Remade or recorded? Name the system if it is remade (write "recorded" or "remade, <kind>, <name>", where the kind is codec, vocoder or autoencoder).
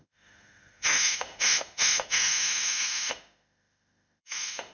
remade, autoencoder, DAC-VAE